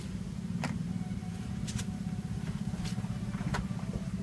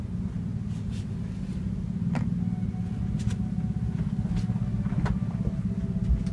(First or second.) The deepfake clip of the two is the first